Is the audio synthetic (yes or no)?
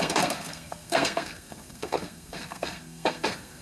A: yes